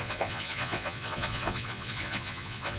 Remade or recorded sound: remade